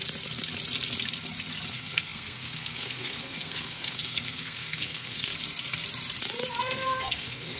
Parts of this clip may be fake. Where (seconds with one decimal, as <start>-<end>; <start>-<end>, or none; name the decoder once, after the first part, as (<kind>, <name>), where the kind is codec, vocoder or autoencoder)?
1.7-5.3 (codec, SNAC); 6.6-7.6